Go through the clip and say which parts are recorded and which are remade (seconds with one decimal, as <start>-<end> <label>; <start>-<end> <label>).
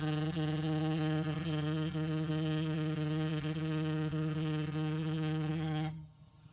0.0-6.5 remade